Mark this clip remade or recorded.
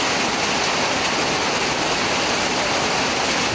recorded